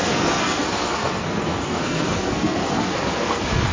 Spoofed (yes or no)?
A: yes